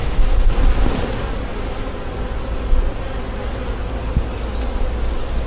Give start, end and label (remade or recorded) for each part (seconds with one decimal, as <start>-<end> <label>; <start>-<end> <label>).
0.0-5.5 recorded